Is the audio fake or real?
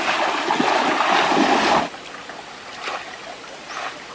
real